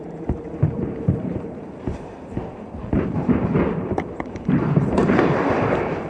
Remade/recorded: remade